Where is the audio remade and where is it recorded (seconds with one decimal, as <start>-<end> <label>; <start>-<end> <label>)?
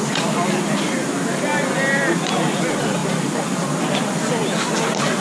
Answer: 0.0-3.0 recorded; 3.0-3.8 remade; 3.8-5.2 recorded